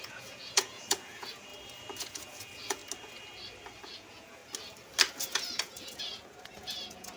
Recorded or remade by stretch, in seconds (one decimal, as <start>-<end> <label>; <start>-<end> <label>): 0.0-1.5 remade; 1.5-2.0 recorded; 2.0-2.8 remade; 2.8-3.8 recorded; 3.8-4.4 remade; 4.4-5.2 recorded; 5.2-7.2 remade